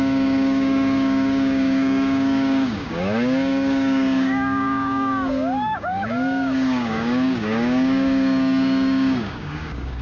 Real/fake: fake